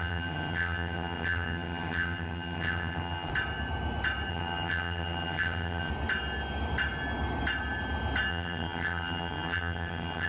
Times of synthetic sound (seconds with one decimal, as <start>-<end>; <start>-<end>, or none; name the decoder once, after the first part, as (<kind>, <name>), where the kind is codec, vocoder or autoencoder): 0.0-3.3 (vocoder, HiFi-GAN); 4.3-5.9; 8.3-10.3